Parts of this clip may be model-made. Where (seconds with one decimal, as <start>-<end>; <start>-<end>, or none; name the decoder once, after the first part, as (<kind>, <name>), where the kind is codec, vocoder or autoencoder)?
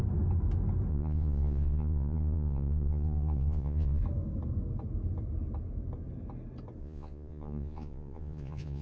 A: 0.9-4.0 (vocoder, Vocos); 6.8-8.8